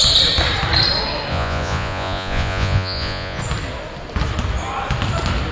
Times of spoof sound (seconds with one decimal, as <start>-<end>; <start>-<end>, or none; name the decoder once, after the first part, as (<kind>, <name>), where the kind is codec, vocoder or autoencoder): 1.3-3.4 (vocoder, Vocos)